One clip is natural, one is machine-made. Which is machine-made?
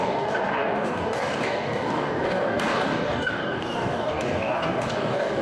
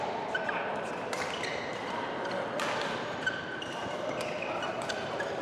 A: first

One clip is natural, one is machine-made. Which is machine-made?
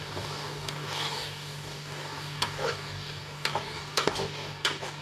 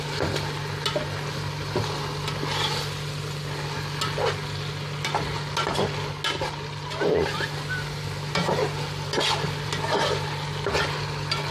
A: first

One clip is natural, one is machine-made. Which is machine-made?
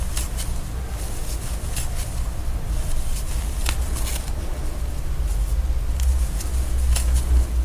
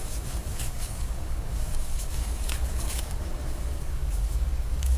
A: second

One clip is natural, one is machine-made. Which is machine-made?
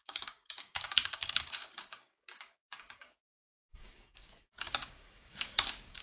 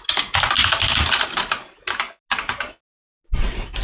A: first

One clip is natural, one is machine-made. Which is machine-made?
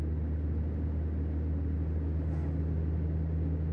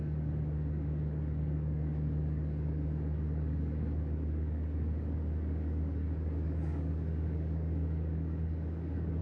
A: second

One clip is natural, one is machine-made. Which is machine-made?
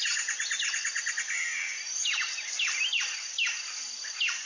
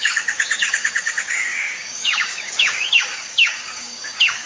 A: second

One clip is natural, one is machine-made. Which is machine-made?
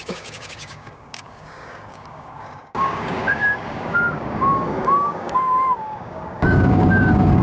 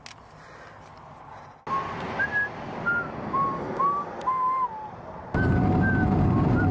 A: first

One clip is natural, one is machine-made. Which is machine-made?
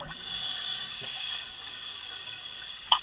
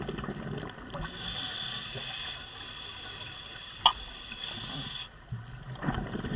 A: first